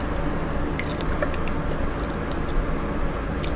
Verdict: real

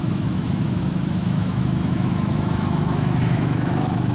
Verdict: fake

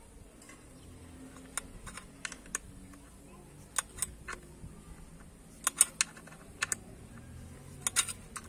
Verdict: real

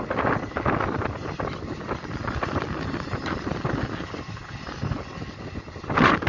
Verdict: real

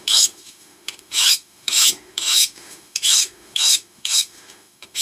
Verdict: fake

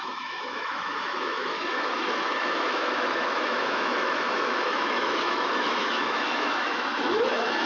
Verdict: fake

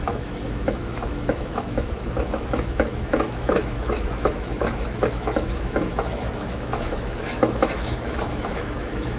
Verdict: fake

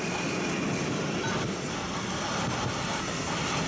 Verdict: real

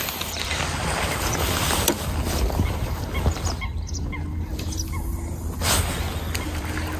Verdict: real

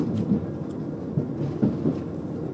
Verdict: real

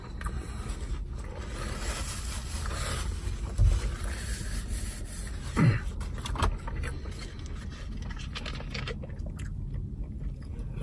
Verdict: real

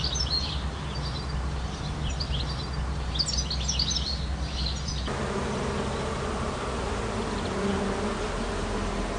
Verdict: real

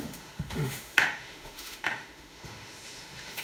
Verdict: fake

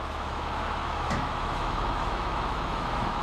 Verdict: fake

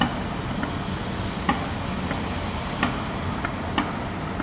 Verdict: real